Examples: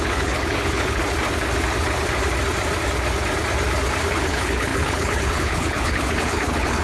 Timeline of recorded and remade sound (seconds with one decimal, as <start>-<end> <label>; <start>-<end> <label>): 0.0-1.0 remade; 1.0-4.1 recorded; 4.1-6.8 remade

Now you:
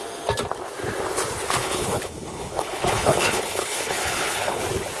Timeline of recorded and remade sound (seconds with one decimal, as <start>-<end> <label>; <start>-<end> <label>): 0.0-1.6 recorded; 1.6-4.6 remade; 4.6-5.0 recorded

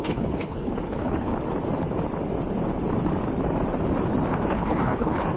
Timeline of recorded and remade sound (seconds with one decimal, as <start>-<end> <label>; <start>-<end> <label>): 0.0-1.3 remade; 1.3-4.5 recorded; 4.5-5.4 remade

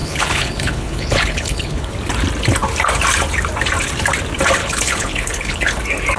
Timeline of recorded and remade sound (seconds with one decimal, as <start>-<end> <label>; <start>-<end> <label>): 0.0-1.9 remade; 1.9-4.6 recorded; 4.6-5.8 remade; 5.8-6.2 recorded

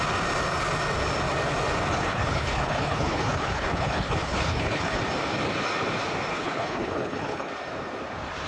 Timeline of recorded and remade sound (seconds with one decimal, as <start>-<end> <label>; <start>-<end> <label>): 0.0-1.9 recorded; 1.9-5.0 remade; 5.0-6.3 recorded; 6.3-7.5 remade; 7.5-8.5 recorded